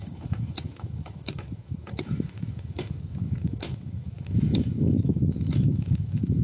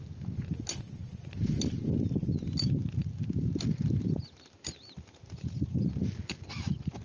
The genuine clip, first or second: second